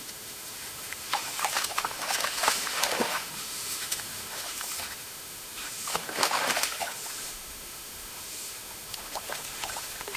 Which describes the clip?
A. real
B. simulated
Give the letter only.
B